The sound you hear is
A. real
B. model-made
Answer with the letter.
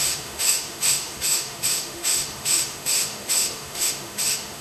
B